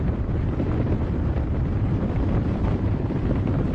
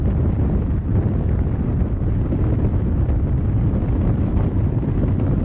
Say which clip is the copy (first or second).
first